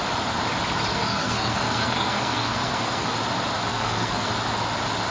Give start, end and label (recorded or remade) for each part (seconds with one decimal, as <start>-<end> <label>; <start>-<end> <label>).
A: 0.0-0.9 recorded; 0.9-3.1 remade; 3.1-3.7 recorded; 3.7-4.3 remade; 4.3-5.1 recorded